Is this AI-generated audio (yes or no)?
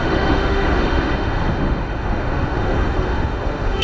yes